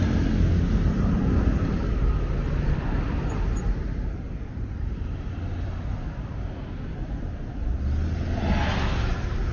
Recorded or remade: recorded